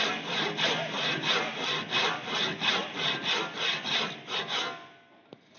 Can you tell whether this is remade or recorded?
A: recorded